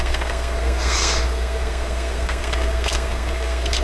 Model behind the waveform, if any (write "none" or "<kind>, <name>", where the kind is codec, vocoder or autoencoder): codec, SNAC